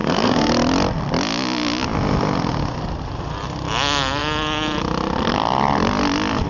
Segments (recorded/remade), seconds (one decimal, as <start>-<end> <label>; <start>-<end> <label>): 0.0-0.5 remade; 0.5-6.5 recorded